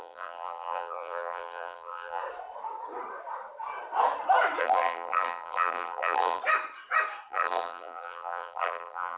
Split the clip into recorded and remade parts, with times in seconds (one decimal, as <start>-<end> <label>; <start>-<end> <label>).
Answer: 0.0-2.2 remade; 2.2-4.6 recorded; 4.6-6.4 remade; 6.4-7.3 recorded; 7.3-9.2 remade